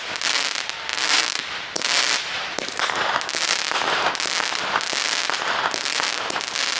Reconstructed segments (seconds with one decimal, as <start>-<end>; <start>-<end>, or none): 0.9-4.1